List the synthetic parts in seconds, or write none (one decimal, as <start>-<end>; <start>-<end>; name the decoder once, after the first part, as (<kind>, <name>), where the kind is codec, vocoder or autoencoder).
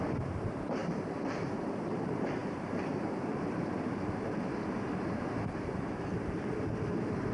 0.0-7.3 (vocoder, BigVGAN v2)